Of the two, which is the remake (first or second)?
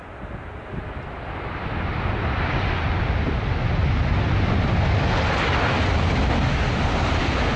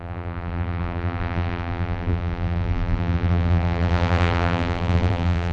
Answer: second